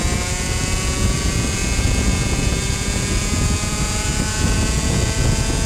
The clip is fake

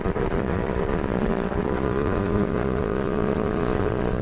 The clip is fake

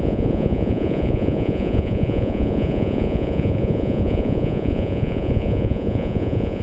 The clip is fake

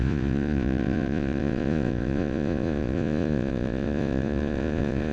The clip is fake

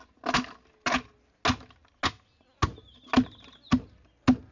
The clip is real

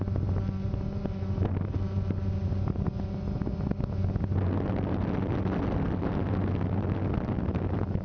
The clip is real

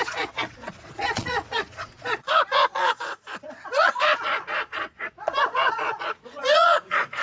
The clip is fake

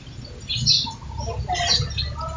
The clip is real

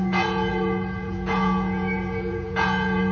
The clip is fake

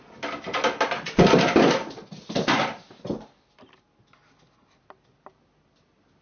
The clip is real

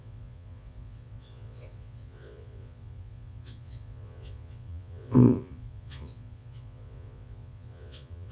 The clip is fake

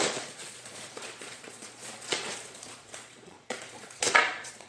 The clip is fake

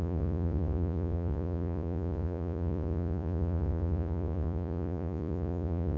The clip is fake